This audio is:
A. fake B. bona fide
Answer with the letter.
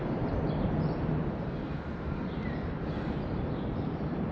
A